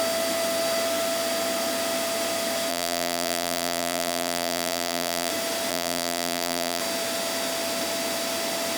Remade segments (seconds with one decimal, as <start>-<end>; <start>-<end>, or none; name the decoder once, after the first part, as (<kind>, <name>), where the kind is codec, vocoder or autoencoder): 2.7-5.3 (vocoder, BigVGAN v2); 5.7-6.8